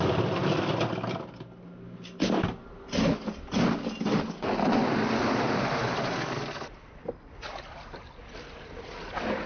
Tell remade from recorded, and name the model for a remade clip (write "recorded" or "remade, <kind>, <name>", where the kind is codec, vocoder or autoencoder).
recorded